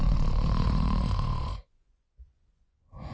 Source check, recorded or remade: remade